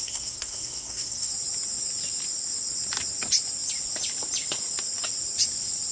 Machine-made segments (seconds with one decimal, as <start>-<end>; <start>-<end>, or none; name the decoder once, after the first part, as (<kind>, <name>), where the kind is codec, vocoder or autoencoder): 0.0-1.3 (codec, SNAC)